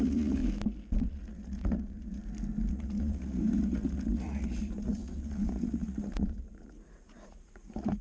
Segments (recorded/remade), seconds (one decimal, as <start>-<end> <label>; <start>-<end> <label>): 0.0-0.4 remade; 0.4-1.0 recorded; 1.0-2.2 remade; 2.2-2.7 recorded; 2.7-8.0 remade